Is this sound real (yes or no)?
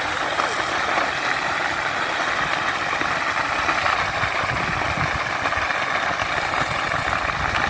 yes